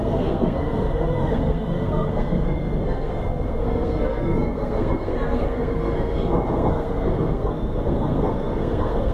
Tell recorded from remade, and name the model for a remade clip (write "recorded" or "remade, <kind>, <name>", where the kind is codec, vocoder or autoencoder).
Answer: remade, codec, SNAC